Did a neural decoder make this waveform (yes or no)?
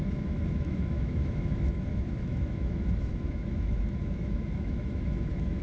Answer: yes